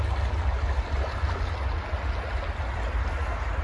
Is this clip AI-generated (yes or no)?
no